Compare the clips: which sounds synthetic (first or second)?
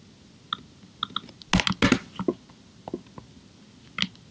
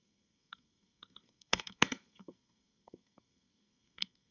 second